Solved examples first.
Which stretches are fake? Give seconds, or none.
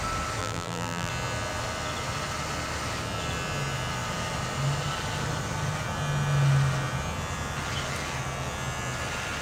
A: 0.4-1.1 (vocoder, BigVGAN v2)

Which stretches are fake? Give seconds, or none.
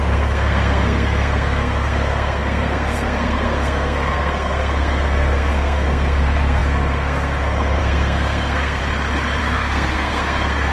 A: 0.0-8.8 (codec, SNAC); 9.4-10.7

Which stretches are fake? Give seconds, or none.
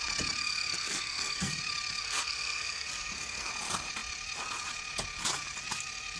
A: 0.4-1.6 (codec, SNAC); 2.0-3.5